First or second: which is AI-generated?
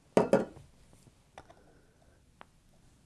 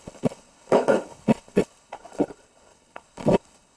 second